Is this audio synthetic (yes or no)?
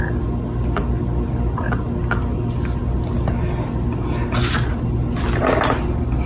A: no